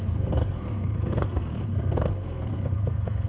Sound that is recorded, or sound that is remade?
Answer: remade